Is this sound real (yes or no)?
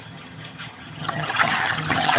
no